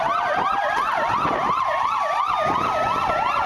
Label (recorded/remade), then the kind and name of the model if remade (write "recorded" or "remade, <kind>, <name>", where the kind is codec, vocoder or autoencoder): recorded